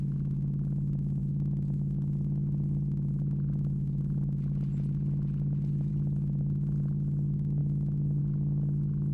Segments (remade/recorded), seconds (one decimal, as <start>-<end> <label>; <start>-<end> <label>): 0.0-9.1 recorded

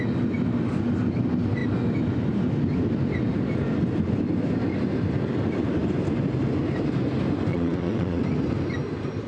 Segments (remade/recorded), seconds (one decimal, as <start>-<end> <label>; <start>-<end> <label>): 0.0-7.5 recorded; 7.5-8.2 remade; 8.2-9.3 recorded

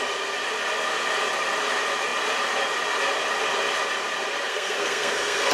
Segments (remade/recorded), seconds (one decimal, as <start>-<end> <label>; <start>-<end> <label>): 0.0-4.5 recorded; 4.5-5.5 remade

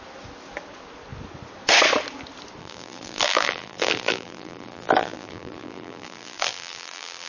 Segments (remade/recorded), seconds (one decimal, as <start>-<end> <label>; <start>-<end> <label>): 0.0-2.6 recorded; 2.6-7.3 remade

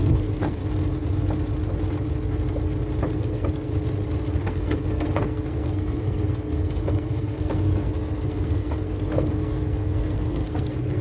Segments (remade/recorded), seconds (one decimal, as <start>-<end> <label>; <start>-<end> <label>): 0.0-0.6 remade; 0.6-3.1 recorded; 3.1-3.7 remade; 3.7-4.4 recorded; 4.4-11.0 remade

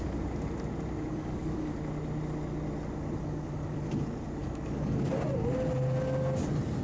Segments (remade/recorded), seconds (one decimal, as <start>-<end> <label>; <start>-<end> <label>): 0.0-1.1 recorded; 1.1-1.7 remade; 1.7-3.2 recorded; 3.2-3.8 remade; 3.8-4.4 recorded; 4.4-5.1 remade; 5.1-6.8 recorded